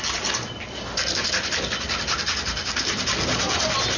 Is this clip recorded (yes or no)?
yes